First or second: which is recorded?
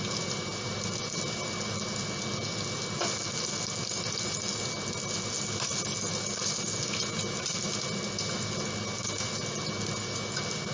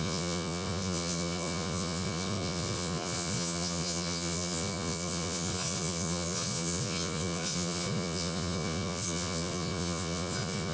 first